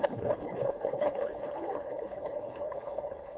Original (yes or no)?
no